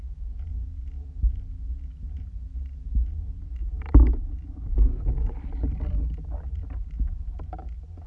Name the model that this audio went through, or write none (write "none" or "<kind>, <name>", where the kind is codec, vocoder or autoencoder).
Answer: none